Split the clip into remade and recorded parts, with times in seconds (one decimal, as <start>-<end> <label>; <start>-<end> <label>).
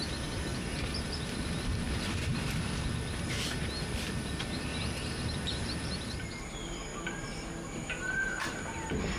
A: 0.0-0.5 recorded; 0.5-1.8 remade; 1.8-4.7 recorded; 4.7-6.5 remade; 6.5-9.2 recorded